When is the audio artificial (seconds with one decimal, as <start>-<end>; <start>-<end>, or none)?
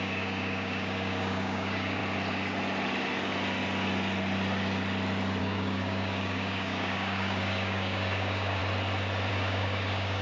0.0-2.0; 5.4-8.6; 9.3-10.2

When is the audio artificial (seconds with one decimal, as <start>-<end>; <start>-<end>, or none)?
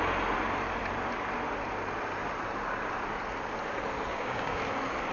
4.1-4.6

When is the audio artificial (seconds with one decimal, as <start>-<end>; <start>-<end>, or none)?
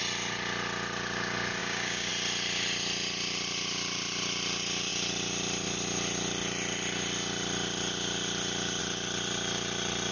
1.6-2.1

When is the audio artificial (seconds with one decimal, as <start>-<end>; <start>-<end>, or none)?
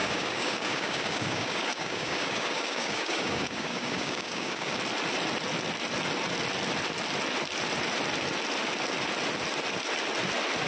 0.0-4.7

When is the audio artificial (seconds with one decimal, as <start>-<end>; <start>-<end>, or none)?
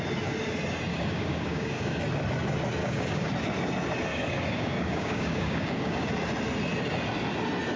0.9-2.0; 2.8-3.3; 4.1-6.1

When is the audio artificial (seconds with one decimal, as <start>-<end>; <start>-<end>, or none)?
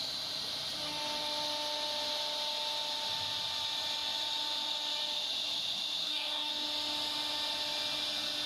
6.0-6.5